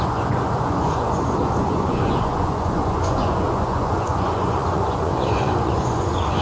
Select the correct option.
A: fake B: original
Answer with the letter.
A